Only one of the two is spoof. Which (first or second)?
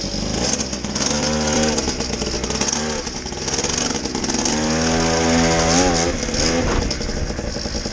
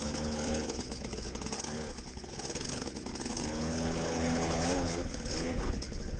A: second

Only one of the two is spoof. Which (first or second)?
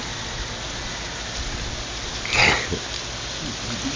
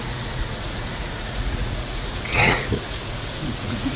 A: second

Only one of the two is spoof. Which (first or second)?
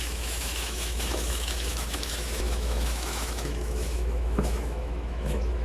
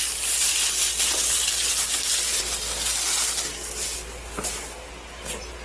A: first